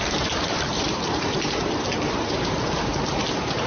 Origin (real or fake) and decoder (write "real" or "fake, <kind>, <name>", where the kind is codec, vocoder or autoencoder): fake, vocoder, BigVGAN v2